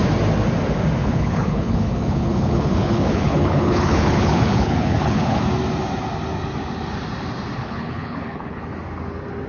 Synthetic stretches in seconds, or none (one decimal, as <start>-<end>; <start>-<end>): 1.0-5.4; 7.6-8.6

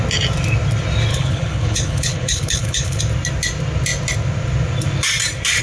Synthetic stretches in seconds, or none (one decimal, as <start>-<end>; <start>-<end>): 1.1-3.0